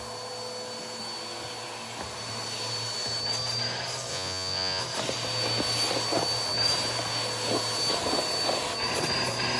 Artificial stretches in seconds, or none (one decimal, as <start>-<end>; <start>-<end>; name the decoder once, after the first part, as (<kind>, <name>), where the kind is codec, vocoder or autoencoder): 4.1-4.8 (vocoder, Vocos)